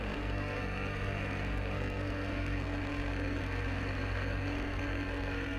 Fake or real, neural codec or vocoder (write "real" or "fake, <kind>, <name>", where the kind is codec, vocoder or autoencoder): fake, codec, SNAC